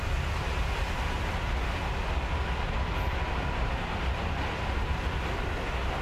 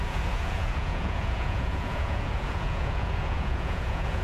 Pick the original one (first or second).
first